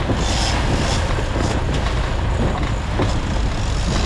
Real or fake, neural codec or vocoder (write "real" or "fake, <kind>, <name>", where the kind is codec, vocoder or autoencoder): real